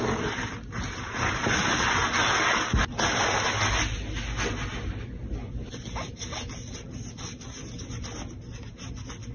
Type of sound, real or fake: real